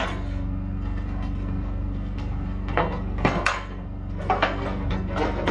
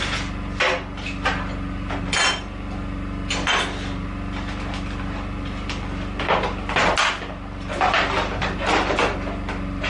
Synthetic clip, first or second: first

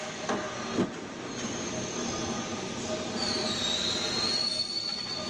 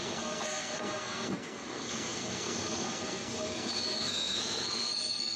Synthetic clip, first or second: second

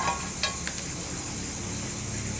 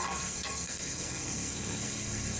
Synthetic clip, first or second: second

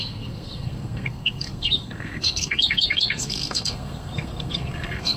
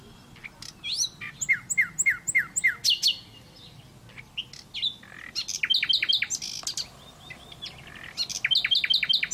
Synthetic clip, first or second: first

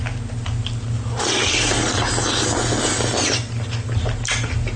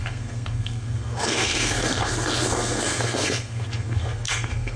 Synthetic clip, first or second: second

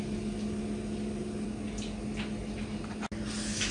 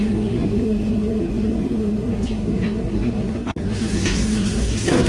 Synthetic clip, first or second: second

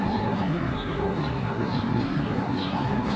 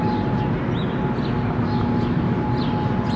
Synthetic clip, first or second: first